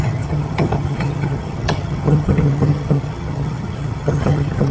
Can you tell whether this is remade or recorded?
remade